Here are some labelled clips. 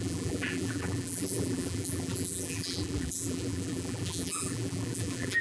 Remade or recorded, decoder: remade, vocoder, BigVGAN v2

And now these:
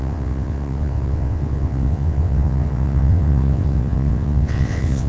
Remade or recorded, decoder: remade, vocoder, WaveNeXt